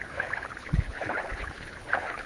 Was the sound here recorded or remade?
remade